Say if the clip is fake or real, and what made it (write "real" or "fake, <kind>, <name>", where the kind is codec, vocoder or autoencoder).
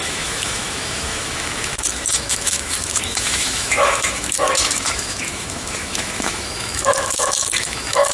fake, autoencoder, DAC-VAE